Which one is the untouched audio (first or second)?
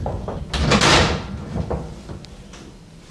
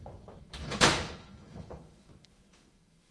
first